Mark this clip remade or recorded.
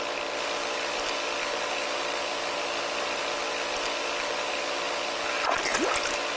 recorded